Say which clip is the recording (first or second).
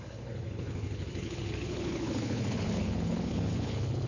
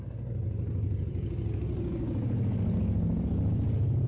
second